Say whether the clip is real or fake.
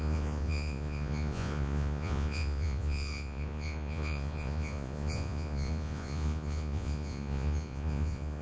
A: fake